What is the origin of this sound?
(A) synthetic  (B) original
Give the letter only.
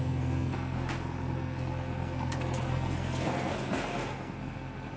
A